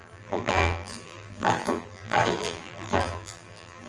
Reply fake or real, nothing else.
fake